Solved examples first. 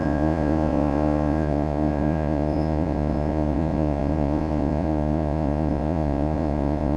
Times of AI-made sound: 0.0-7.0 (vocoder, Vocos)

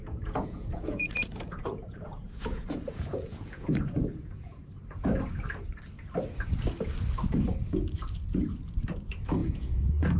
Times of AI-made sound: 0.0-4.7 (vocoder, Vocos); 9.4-10.2

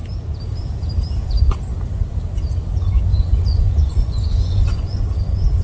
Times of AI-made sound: 3.1-5.0 (vocoder, Vocos)

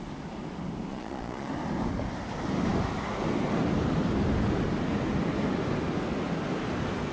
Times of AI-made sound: 0.9-1.5 (vocoder, Vocos)

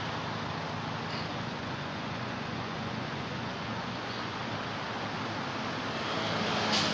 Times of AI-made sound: 1.3-4.4 (vocoder, Vocos)

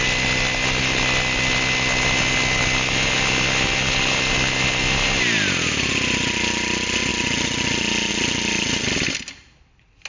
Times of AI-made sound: none

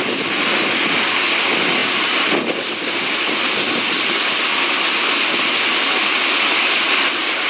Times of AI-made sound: none

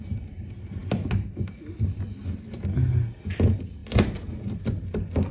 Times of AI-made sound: none